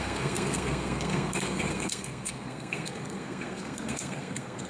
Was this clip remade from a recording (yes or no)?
yes